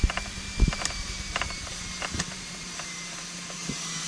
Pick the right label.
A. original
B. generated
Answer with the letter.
B